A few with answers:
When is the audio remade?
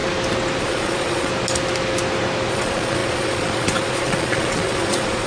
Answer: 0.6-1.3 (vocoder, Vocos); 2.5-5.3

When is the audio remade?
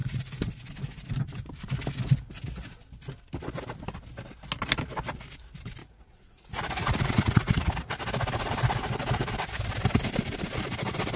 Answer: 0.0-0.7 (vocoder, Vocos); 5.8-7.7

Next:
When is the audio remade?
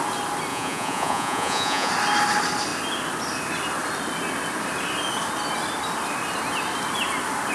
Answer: 0.5-1.9 (vocoder, Vocos)